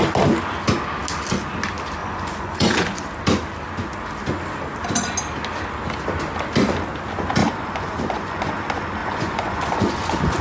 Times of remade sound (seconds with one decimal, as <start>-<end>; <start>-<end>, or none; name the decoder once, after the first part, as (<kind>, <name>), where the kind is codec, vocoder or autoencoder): 2.0-3.0 (vocoder, Vocos); 7.4-8.5; 9.0-10.4